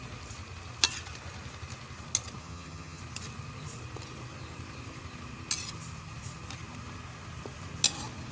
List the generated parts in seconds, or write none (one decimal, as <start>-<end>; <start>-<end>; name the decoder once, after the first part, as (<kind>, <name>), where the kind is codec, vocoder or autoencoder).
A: 2.4-3.0 (vocoder, HiFi-GAN)